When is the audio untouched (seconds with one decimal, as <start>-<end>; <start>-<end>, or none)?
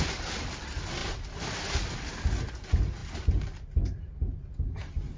0.0-5.2